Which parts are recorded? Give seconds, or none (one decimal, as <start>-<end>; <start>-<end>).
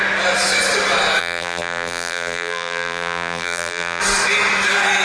0.0-1.2; 4.0-5.0